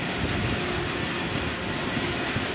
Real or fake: real